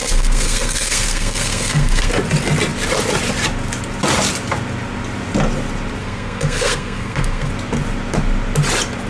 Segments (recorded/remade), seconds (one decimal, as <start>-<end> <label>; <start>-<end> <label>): 0.0-2.1 remade; 2.1-6.0 recorded; 6.0-7.5 remade; 7.5-9.1 recorded